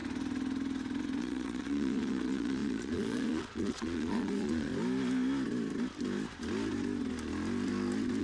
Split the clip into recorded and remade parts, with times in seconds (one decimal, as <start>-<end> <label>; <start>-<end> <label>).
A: 0.0-1.2 recorded; 1.2-4.7 remade; 4.7-8.2 recorded